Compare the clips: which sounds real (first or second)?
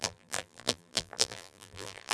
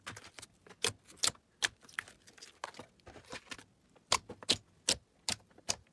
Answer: second